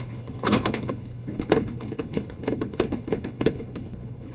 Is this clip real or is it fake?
fake